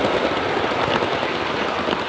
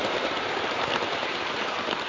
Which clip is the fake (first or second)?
second